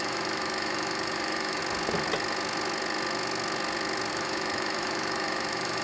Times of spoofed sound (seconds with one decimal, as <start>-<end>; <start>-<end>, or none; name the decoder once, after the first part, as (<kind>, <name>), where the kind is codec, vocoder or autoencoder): 0.0-1.6 (autoencoder, DAC-VAE); 4.1-5.8